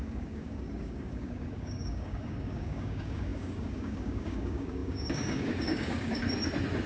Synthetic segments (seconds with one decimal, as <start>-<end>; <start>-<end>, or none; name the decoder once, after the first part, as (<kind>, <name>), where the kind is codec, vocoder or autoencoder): 0.0-6.2 (codec, DAC)